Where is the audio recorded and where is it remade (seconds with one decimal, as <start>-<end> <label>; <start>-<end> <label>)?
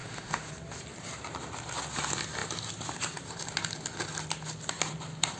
0.0-0.5 remade; 0.5-5.4 recorded